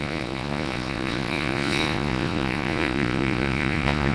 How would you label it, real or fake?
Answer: fake